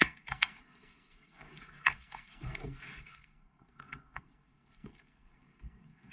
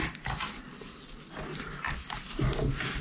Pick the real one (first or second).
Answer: second